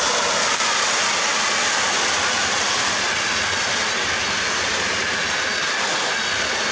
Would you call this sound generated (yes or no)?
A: no